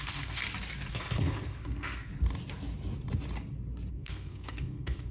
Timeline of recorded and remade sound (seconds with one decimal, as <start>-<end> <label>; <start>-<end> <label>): 0.0-0.4 remade; 0.4-0.9 recorded; 0.9-2.1 remade; 2.1-3.9 recorded; 3.9-5.1 remade